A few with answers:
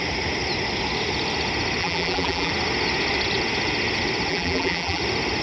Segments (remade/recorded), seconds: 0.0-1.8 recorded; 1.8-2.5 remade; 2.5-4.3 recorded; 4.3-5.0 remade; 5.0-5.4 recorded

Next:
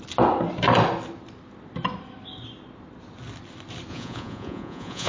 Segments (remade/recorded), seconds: 0.0-3.9 recorded; 3.9-5.1 remade

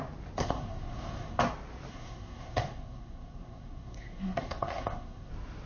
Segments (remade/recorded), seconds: 0.0-0.4 recorded; 0.4-1.4 remade; 1.4-1.9 recorded; 1.9-5.3 remade; 5.3-5.7 recorded

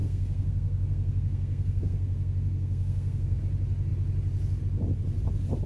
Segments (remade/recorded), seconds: 0.0-3.4 remade; 3.4-5.7 recorded

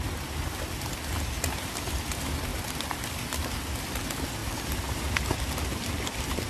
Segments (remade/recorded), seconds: 0.0-2.5 recorded; 2.5-3.7 remade; 3.7-4.4 recorded; 4.4-5.1 remade; 5.1-6.5 recorded

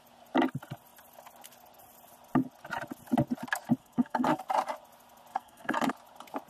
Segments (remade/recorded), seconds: 0.0-3.8 recorded; 3.8-4.4 remade; 4.4-5.3 recorded; 5.3-5.9 remade; 5.9-6.5 recorded